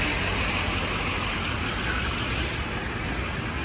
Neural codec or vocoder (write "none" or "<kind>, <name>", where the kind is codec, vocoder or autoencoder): none